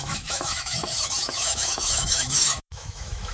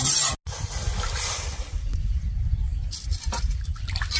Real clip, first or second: second